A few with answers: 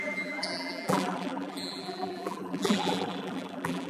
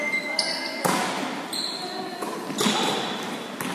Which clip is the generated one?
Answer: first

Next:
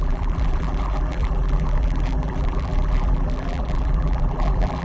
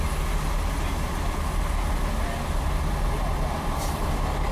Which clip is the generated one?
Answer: first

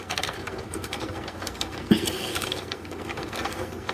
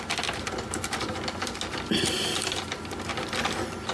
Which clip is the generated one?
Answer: first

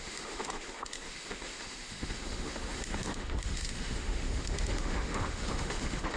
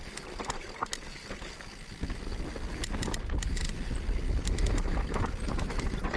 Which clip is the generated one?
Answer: first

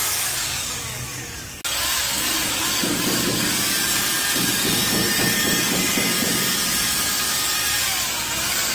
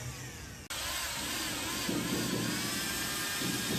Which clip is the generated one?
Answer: first